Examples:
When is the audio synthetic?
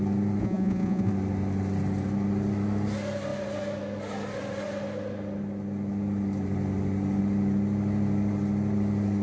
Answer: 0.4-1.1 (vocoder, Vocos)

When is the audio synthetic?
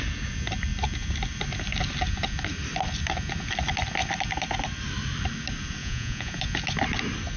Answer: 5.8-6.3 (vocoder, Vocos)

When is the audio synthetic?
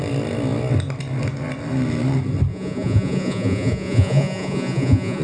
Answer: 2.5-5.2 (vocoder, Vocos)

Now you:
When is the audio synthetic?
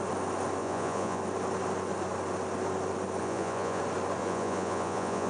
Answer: 0.6-1.2 (vocoder, Vocos); 3.2-3.8; 4.2-5.3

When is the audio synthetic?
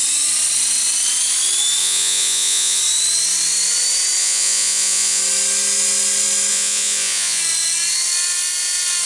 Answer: 1.8-2.8 (vocoder, Vocos); 4.2-5.2; 6.5-7.4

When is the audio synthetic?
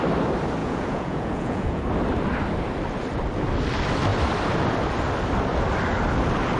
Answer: 0.6-1.8 (vocoder, Vocos)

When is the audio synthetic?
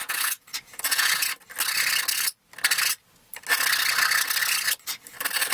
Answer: 0.0-1.3 (vocoder, Vocos)